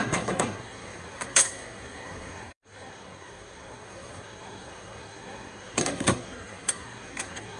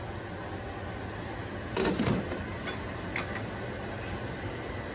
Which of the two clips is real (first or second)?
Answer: second